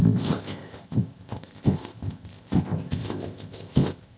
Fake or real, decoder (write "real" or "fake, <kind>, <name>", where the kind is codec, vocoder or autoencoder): fake, codec, ZipCodec